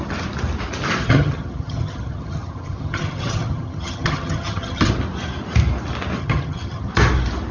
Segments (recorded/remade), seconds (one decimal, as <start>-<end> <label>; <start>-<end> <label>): 0.0-1.0 recorded; 1.0-4.9 remade; 4.9-6.2 recorded; 6.2-6.9 remade; 6.9-7.5 recorded